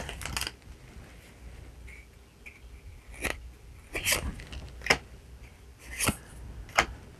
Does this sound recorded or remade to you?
recorded